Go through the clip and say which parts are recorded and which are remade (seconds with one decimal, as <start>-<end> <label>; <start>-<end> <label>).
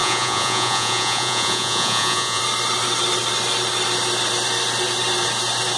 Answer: 0.0-2.4 remade; 2.4-5.8 recorded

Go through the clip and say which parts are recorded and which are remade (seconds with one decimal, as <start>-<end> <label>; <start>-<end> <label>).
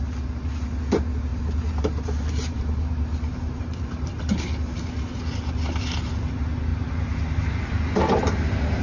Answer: 0.0-1.3 recorded; 1.3-4.2 remade; 4.2-8.8 recorded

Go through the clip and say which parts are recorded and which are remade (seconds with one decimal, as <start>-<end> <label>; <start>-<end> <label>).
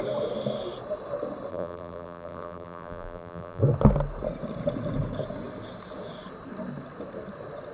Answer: 0.0-1.5 recorded; 1.5-3.6 remade; 3.6-7.7 recorded